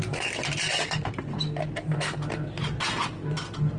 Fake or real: real